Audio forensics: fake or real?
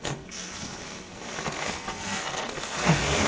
fake